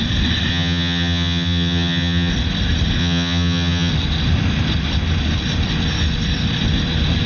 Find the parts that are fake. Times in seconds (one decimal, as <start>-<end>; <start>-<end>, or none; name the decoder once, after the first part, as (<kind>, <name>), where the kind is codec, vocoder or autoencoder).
0.5-2.3 (vocoder, HiFi-GAN); 3.0-3.9

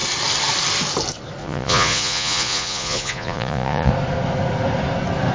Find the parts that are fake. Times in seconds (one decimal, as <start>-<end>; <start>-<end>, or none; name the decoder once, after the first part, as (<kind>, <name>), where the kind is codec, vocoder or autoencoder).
1.4-3.9 (vocoder, Vocos)